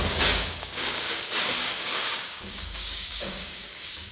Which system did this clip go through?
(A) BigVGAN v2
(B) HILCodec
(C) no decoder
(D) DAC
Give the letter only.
D